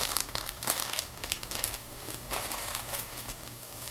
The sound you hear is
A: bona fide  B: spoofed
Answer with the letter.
B